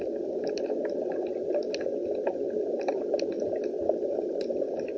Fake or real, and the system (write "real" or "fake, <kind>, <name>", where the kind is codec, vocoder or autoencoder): real